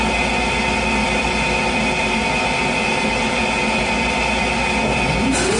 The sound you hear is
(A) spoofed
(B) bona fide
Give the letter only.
B